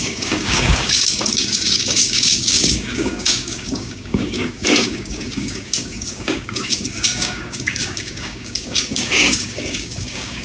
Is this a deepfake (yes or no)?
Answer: yes